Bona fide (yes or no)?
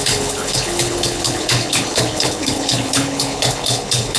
no